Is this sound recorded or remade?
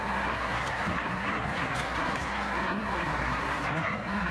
remade